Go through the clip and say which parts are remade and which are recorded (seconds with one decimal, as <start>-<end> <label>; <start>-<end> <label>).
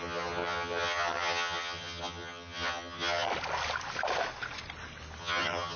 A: 0.0-3.3 remade; 3.3-5.2 recorded; 5.2-5.8 remade